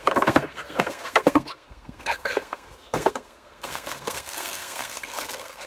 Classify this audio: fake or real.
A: fake